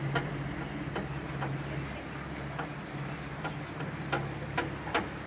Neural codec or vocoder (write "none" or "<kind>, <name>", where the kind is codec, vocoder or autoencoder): none